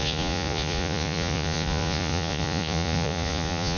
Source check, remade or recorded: remade